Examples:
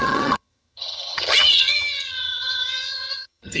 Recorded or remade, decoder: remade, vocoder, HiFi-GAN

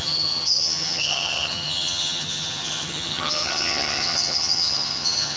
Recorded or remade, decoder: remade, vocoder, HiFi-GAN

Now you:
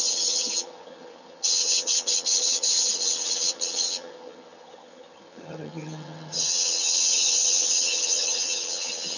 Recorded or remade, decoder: remade, vocoder, HiFi-GAN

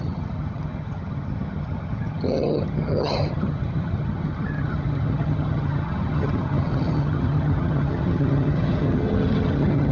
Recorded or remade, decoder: remade, vocoder, HiFi-GAN